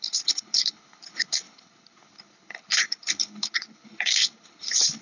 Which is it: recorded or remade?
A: remade